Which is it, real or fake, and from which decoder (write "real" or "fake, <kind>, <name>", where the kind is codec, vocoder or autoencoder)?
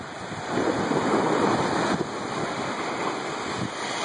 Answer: real